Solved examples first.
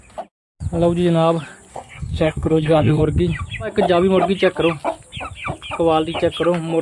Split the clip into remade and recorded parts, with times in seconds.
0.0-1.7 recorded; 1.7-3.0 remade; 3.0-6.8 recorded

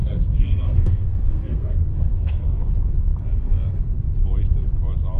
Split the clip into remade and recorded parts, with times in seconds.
0.0-2.7 remade; 2.7-5.2 recorded

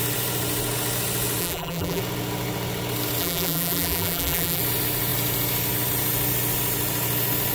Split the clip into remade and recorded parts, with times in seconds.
0.0-1.4 recorded; 1.4-2.0 remade; 2.0-3.2 recorded; 3.2-4.6 remade; 4.6-7.5 recorded

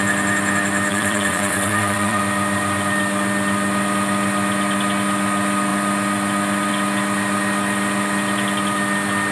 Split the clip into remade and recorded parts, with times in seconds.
0.0-0.9 recorded; 0.9-2.2 remade; 2.2-9.3 recorded

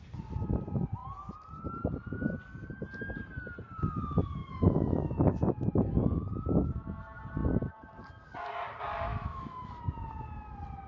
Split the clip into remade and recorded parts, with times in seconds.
0.0-4.4 recorded; 4.4-5.1 remade; 5.1-9.1 recorded; 9.1-9.9 remade; 9.9-10.9 recorded

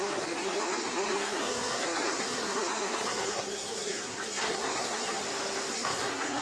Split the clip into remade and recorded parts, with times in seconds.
0.0-5.2 remade; 5.2-5.7 recorded; 5.7-6.4 remade